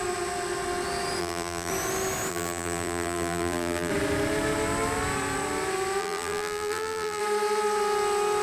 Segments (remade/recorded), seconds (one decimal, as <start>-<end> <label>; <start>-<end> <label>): 0.0-1.2 recorded; 1.2-1.7 remade; 1.7-2.3 recorded; 2.3-3.9 remade; 3.9-6.0 recorded; 6.0-7.2 remade; 7.2-8.4 recorded

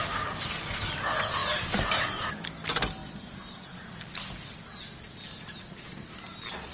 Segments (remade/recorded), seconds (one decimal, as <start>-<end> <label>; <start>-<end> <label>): 0.0-1.4 recorded; 1.4-2.3 remade; 2.3-6.7 recorded

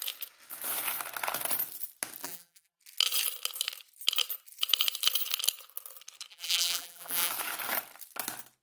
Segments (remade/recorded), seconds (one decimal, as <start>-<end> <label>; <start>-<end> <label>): 0.0-2.2 recorded; 2.2-2.8 remade; 2.8-6.3 recorded; 6.3-7.3 remade; 7.3-8.6 recorded

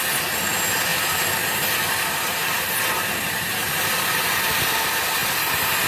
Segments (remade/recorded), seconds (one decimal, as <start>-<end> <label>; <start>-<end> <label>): 0.0-0.9 recorded; 0.9-4.4 remade; 4.4-5.2 recorded; 5.2-5.9 remade